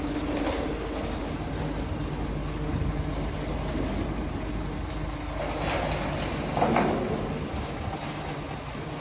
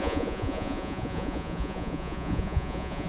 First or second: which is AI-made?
second